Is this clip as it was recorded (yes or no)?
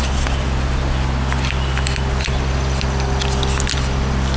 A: yes